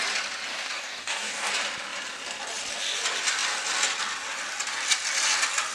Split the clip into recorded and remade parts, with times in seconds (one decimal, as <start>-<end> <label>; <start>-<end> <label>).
0.0-0.5 recorded; 0.5-1.5 remade; 1.5-5.7 recorded